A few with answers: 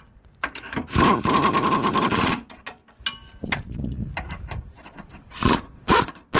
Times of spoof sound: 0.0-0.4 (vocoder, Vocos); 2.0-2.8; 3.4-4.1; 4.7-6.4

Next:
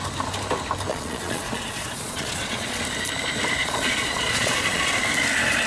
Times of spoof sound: 0.9-2.8 (vocoder, Vocos); 3.6-5.0

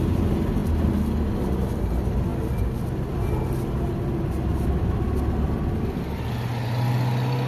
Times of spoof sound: none

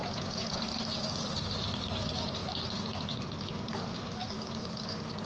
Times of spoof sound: 0.0-0.6 (vocoder, Vocos)